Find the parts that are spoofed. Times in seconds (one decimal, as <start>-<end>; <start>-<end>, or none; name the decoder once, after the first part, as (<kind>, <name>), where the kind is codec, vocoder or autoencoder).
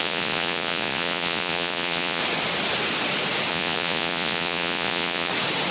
0.0-2.2 (vocoder, Vocos); 3.5-5.3